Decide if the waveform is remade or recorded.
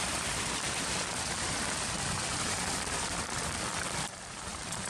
remade